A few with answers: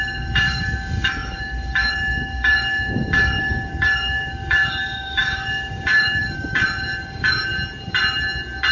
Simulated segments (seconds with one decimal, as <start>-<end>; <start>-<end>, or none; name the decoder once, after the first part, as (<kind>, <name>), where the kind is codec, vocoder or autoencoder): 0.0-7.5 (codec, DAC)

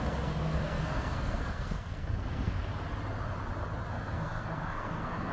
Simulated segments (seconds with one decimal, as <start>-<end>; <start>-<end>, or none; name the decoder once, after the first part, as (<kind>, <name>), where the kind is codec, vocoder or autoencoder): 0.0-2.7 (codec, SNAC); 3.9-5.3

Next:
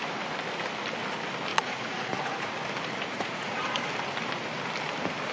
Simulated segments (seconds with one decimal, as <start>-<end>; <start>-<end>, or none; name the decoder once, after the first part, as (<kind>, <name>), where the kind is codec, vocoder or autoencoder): 1.5-2.5 (vocoder, Vocos); 3.1-3.9